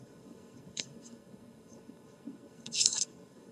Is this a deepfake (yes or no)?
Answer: yes